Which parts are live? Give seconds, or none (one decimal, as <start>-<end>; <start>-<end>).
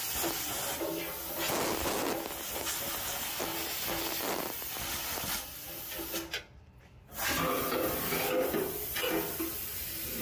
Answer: 0.0-10.2